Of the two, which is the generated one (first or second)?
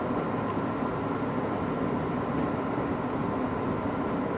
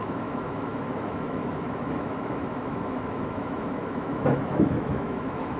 second